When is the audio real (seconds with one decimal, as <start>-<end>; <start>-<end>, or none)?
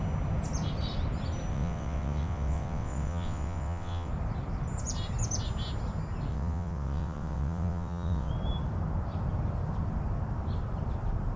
0.0-1.5; 4.1-6.3; 8.3-11.4